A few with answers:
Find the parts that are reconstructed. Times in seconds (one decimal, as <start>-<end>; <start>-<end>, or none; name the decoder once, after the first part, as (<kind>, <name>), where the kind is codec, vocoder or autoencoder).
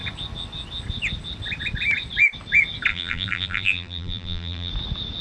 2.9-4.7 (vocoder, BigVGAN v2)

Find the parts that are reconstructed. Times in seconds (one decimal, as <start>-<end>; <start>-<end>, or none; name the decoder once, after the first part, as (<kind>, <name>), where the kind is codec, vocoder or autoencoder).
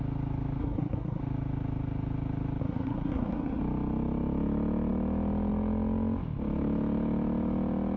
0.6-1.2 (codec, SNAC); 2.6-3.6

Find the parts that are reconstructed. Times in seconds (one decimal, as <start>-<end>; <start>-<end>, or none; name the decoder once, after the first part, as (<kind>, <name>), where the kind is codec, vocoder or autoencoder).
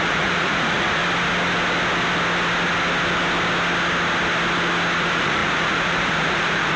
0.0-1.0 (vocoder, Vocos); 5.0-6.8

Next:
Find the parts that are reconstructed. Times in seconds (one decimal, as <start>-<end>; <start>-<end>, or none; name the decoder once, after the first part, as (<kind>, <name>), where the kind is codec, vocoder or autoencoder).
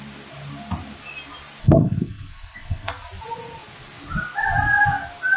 1.6-2.9 (codec, SNAC)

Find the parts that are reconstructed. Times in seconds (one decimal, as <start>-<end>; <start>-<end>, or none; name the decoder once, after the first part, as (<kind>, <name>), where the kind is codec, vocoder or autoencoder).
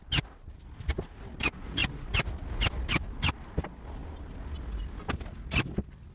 none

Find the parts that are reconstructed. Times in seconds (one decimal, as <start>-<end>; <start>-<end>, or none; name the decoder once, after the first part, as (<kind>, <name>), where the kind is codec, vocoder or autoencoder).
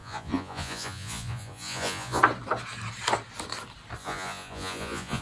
0.0-2.2 (vocoder, Vocos); 4.0-5.2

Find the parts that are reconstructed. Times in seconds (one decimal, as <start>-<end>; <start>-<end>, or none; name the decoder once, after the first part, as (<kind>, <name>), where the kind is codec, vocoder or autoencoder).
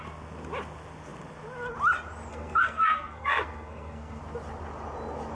2.3-4.2 (codec, SNAC)